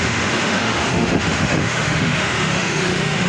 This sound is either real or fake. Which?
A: fake